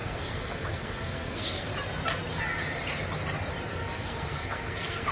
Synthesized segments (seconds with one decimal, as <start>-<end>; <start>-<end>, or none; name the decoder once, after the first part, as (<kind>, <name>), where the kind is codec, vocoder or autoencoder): 0.0-1.7 (codec, SNAC); 3.7-5.1